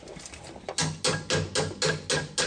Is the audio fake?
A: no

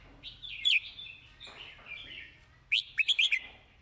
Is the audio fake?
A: no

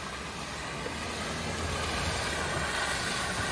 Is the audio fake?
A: no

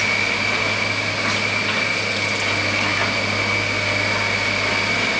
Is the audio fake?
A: no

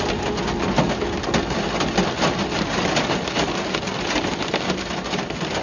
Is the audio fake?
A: no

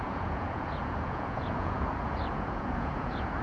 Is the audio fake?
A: yes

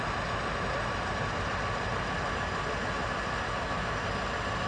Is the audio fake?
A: no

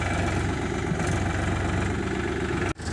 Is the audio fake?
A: no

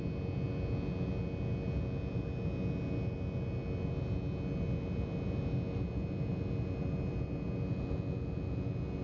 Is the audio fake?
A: no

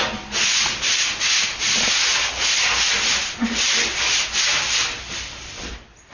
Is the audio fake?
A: no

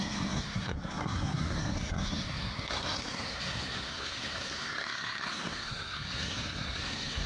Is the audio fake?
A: yes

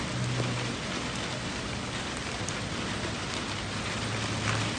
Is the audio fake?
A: no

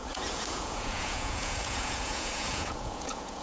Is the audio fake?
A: yes